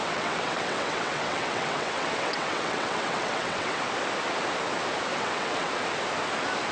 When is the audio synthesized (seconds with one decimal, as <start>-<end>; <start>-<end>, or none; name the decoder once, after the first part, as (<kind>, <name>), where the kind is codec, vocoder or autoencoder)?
0.0-3.8 (vocoder, WaveNeXt); 5.1-5.7